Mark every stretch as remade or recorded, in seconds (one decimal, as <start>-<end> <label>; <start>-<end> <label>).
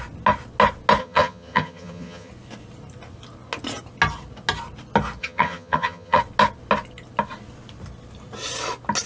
0.0-1.0 recorded; 1.0-2.3 remade; 2.3-5.2 recorded; 5.2-6.2 remade; 6.2-9.1 recorded